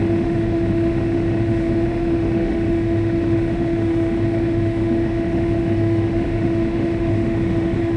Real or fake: fake